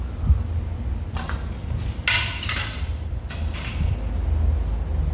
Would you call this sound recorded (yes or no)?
yes